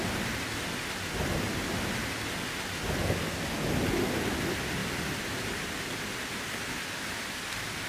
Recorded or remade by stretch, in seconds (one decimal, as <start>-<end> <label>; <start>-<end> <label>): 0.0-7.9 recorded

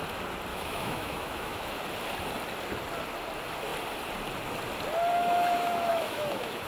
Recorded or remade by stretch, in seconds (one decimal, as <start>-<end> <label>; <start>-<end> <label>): 0.0-0.5 recorded; 0.5-1.8 remade; 1.8-5.1 recorded; 5.1-6.7 remade

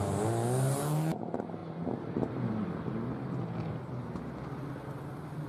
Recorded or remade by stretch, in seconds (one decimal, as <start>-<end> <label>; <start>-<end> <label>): 0.0-1.6 recorded; 1.6-2.3 remade; 2.3-5.5 recorded

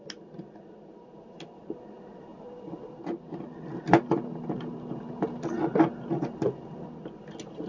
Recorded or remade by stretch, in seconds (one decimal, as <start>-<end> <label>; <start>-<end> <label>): 0.0-7.7 recorded

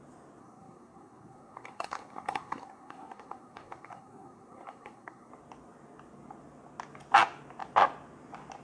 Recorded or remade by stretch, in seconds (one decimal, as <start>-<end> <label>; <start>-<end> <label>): 0.0-0.4 recorded; 0.4-5.3 remade; 5.3-8.6 recorded

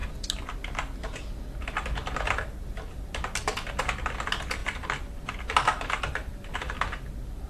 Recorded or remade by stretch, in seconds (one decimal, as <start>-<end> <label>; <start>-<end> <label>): 0.0-4.6 recorded; 4.6-6.8 remade; 6.8-7.5 recorded